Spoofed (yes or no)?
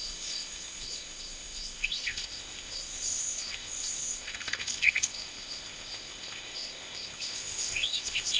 yes